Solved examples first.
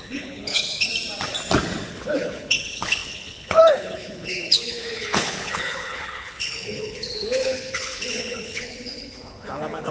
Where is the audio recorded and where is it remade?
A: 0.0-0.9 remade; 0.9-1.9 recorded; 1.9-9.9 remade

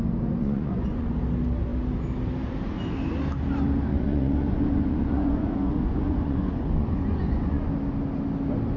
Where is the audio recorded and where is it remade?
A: 0.0-0.4 recorded; 0.4-1.1 remade; 1.1-3.9 recorded; 3.9-7.7 remade; 7.7-8.8 recorded

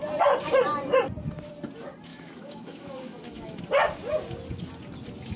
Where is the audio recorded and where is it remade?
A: 0.0-2.1 recorded; 2.1-3.6 remade; 3.6-5.4 recorded

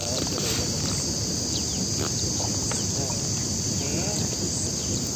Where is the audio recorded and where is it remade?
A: 0.0-0.9 remade; 0.9-5.2 recorded

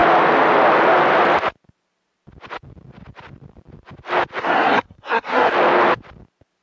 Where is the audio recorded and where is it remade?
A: 0.0-4.4 recorded; 4.4-5.5 remade; 5.5-6.6 recorded